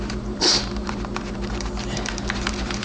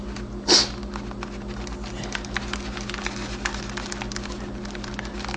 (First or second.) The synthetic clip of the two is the first